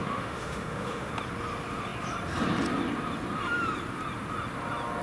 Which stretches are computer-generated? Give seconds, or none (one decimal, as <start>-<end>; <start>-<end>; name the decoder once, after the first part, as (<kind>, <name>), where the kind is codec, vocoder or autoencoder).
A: 0.0-1.1 (autoencoder, DAC-VAE)